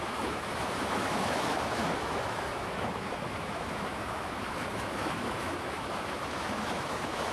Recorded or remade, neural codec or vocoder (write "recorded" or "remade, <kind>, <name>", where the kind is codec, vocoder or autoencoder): remade, autoencoder, DAC-VAE